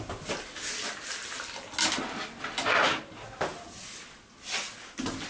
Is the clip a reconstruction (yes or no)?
no